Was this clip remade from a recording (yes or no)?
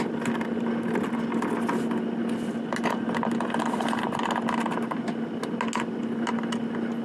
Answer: no